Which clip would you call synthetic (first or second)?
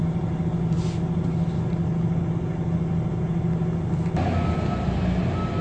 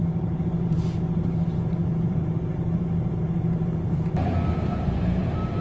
second